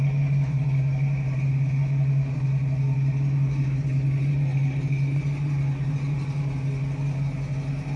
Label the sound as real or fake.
real